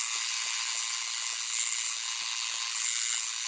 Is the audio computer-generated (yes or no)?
no